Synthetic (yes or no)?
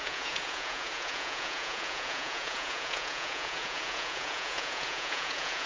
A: yes